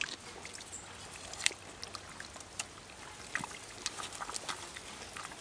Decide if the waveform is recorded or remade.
recorded